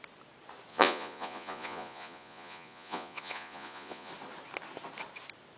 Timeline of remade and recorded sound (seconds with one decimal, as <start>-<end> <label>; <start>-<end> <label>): 0.0-0.7 recorded; 0.7-4.1 remade; 4.1-5.6 recorded